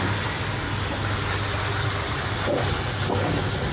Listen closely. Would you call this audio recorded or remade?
recorded